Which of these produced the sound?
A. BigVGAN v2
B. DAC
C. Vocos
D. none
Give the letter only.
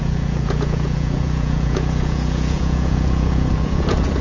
C